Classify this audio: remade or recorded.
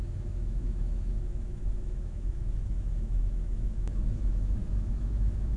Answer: remade